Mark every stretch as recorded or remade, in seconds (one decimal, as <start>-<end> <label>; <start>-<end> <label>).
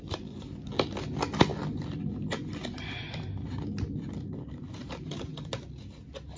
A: 0.0-6.4 recorded